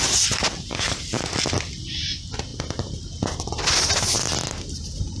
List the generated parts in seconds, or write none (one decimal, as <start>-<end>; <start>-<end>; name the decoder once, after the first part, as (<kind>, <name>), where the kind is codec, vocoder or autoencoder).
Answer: none